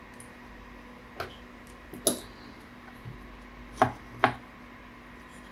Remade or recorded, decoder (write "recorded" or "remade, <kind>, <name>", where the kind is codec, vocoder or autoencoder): recorded